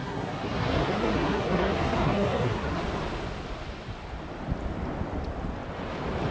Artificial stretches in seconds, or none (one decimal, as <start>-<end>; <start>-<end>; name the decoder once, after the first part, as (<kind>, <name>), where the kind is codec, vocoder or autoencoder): 0.0-2.8 (codec, SNAC)